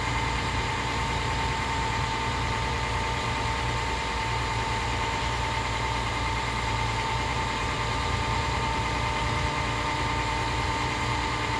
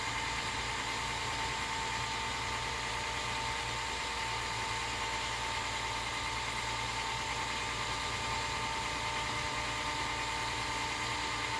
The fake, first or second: first